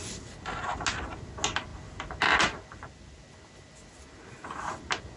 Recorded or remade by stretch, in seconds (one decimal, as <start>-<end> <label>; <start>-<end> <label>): 0.0-5.2 recorded